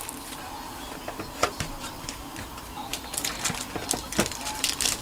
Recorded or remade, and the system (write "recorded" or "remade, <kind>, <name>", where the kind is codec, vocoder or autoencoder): recorded